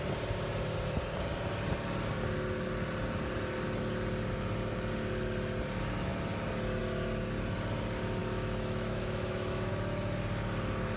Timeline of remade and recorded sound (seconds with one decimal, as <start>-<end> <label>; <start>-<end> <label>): 0.0-8.2 recorded; 8.2-9.7 remade; 9.7-11.0 recorded

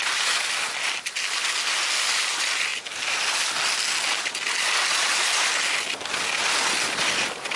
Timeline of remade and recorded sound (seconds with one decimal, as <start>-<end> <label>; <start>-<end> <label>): 0.0-7.6 recorded

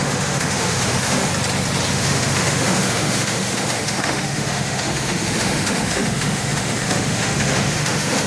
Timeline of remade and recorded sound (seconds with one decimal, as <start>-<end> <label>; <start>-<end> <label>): 0.0-1.3 remade; 1.3-1.9 recorded; 1.9-8.3 remade

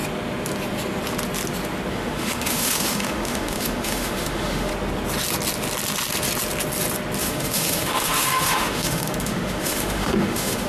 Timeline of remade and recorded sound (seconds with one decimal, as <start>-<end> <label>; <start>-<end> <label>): 0.0-1.9 recorded; 1.9-4.7 remade; 4.7-7.2 recorded; 7.2-10.7 remade